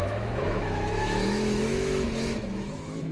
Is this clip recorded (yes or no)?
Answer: no